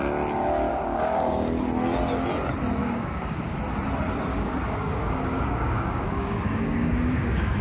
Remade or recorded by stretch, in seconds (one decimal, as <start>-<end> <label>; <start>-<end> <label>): 0.0-0.7 recorded; 0.7-1.6 remade; 1.6-2.8 recorded; 2.8-3.6 remade; 3.6-4.3 recorded; 4.3-7.6 remade